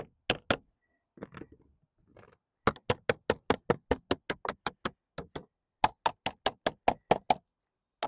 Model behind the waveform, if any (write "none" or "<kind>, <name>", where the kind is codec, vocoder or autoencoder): none